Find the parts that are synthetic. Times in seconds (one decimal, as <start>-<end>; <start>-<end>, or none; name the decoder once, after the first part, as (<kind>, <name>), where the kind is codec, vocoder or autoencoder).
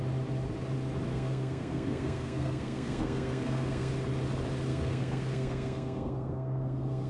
1.1-3.9 (codec, SNAC); 4.7-7.1